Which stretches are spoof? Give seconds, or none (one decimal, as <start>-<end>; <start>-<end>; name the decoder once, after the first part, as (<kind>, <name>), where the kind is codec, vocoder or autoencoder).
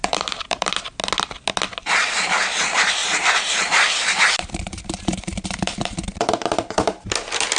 0.0-0.7 (vocoder, BigVGAN v2); 3.0-7.1